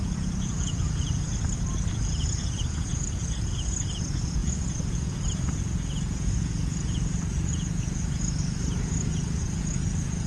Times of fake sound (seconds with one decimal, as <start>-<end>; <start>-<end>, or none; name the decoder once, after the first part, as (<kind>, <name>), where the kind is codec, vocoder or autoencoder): 0.0-1.3 (vocoder, Vocos); 1.9-10.3